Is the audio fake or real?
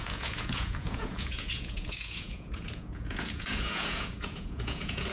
fake